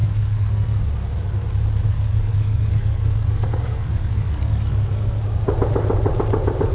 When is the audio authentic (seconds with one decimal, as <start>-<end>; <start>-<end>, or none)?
0.8-1.9; 5.2-6.7